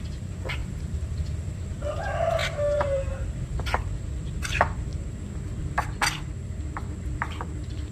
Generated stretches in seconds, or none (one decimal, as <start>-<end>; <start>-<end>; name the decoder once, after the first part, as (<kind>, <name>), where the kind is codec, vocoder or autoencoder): 2.4-3.2 (vocoder, BigVGAN v2)